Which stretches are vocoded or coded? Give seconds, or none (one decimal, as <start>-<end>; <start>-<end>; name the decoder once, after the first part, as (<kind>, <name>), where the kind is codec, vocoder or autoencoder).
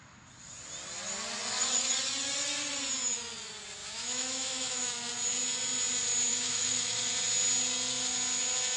3.8-5.1 (autoencoder, DAC-VAE); 6.3-7.0